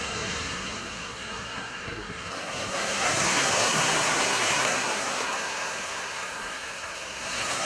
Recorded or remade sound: remade